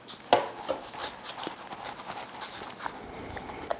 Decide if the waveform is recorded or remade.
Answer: recorded